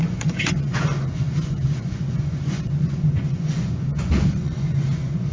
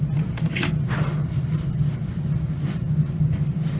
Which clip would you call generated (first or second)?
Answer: first